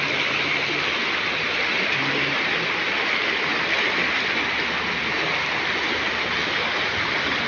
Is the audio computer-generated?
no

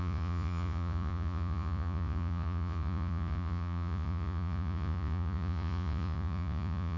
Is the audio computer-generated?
yes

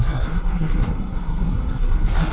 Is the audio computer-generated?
yes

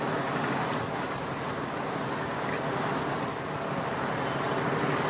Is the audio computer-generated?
no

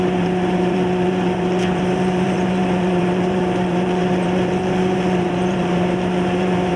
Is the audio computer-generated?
yes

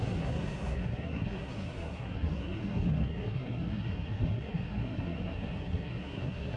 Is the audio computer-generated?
yes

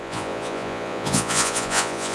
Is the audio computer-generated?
yes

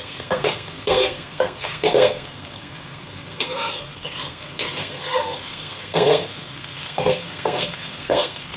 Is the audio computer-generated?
yes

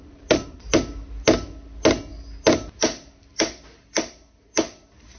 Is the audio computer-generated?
no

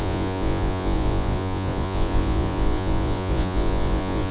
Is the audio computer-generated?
yes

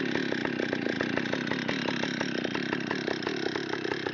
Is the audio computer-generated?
no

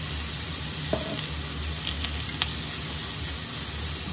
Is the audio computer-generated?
no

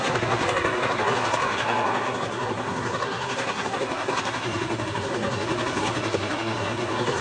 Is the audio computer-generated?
yes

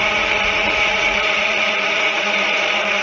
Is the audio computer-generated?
yes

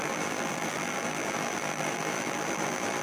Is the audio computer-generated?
yes